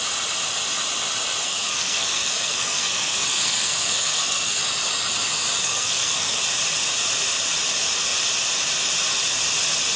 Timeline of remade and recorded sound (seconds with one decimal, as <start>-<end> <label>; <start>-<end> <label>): 0.0-1.4 recorded; 1.4-4.6 remade; 4.6-5.6 recorded; 5.6-6.4 remade; 6.4-10.0 recorded